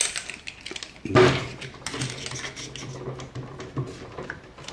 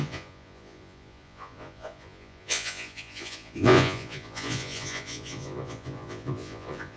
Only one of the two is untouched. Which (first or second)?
first